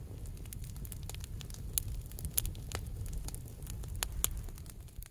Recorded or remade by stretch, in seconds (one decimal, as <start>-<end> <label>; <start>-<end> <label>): 0.0-5.1 recorded